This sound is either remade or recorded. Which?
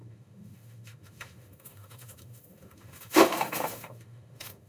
remade